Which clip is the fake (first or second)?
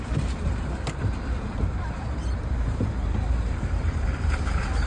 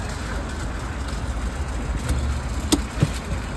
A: first